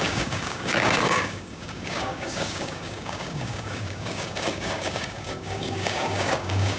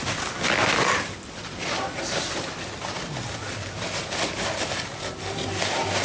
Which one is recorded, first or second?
second